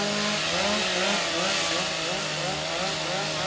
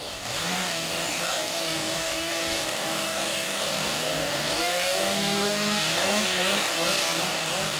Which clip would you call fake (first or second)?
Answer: second